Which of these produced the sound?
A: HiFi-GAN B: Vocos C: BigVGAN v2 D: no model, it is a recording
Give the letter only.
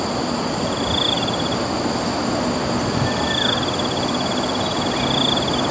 D